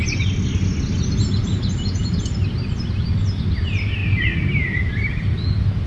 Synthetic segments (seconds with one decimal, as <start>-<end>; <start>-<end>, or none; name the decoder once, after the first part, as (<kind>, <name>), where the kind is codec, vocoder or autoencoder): 1.4-2.2 (vocoder, BigVGAN v2); 4.0-5.4